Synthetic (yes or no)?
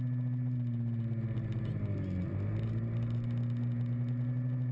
no